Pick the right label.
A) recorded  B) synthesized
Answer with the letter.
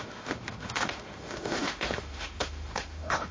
B